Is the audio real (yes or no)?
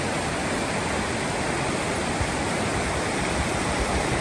yes